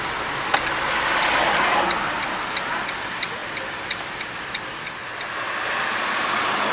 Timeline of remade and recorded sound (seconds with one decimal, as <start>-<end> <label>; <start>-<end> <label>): 0.0-6.7 recorded